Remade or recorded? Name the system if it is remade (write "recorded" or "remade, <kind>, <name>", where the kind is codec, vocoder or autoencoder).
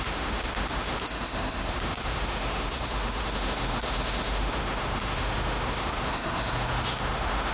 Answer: remade, autoencoder, DAC-VAE